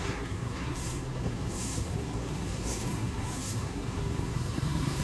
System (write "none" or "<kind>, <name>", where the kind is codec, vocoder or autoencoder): codec, SNAC